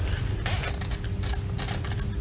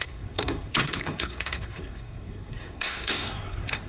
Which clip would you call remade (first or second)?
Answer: second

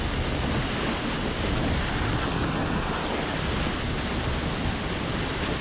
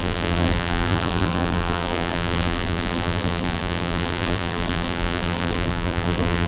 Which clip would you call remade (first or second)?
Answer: second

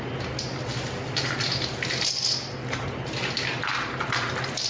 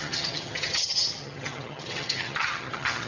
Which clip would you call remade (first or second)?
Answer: second